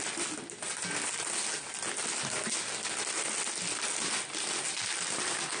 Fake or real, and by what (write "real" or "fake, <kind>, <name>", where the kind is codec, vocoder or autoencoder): real